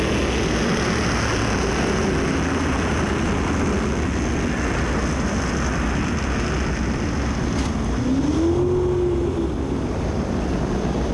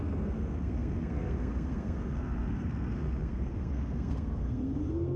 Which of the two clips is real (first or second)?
first